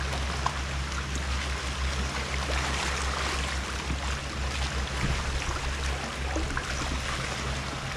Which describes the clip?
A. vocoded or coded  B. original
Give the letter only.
B